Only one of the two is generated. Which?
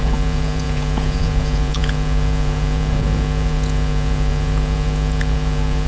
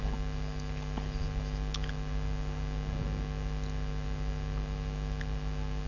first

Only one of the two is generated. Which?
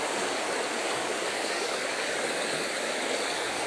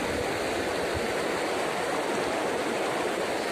first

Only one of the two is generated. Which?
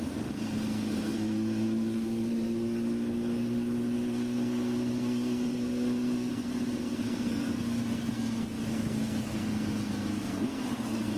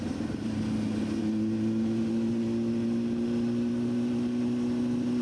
first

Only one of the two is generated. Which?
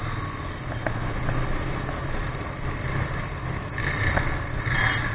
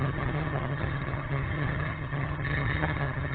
second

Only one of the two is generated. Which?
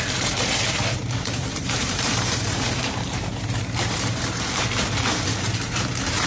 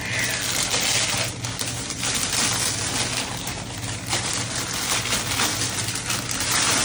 first